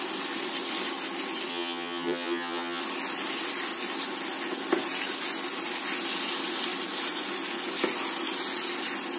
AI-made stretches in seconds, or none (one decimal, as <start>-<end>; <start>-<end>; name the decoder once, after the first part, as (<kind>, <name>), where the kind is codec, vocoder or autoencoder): 1.5-2.8 (vocoder, HiFi-GAN)

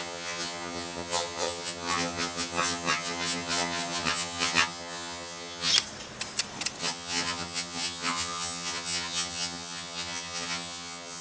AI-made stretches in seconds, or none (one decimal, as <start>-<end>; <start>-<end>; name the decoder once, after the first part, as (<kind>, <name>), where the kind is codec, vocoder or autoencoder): 0.0-5.7 (vocoder, HiFi-GAN); 6.8-11.2

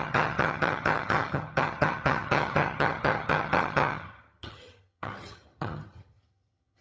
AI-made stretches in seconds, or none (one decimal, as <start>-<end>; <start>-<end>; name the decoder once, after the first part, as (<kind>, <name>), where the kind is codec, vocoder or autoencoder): 0.0-6.8 (vocoder, HiFi-GAN)

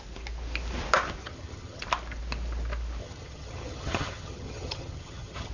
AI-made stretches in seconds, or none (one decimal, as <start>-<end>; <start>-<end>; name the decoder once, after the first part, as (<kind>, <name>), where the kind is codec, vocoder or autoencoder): 1.2-1.8 (vocoder, HiFi-GAN); 3.0-5.5